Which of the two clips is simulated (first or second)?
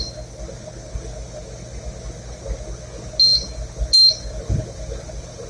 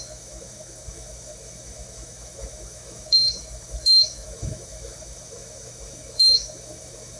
second